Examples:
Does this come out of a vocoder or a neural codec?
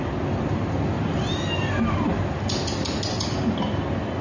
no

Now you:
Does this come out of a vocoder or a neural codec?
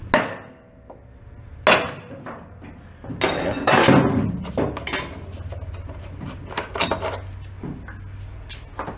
no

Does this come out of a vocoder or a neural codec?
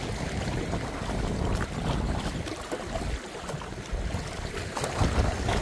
no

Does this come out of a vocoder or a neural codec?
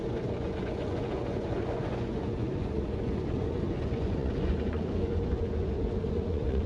yes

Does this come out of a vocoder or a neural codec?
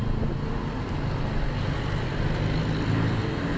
no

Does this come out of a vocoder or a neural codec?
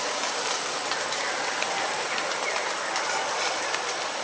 no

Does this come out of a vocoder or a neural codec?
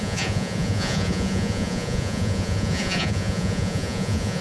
yes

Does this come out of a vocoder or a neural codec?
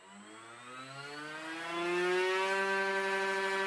no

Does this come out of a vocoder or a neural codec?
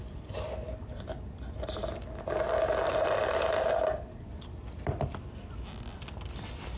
no